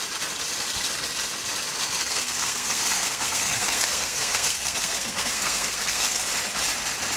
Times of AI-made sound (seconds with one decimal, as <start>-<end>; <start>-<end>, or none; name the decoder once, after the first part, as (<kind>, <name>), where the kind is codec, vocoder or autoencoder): 2.0-6.2 (codec, SNAC)